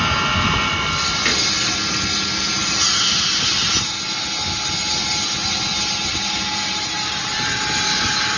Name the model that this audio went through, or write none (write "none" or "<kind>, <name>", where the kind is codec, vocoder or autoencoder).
none